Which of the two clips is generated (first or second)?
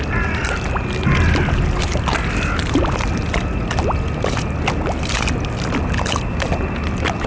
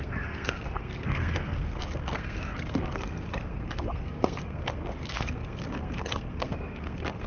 second